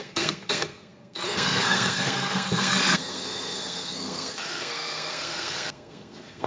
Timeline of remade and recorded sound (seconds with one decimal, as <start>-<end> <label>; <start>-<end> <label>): 0.0-6.5 remade